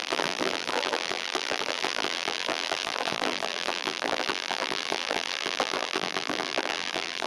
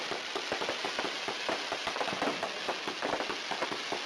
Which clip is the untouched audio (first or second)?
second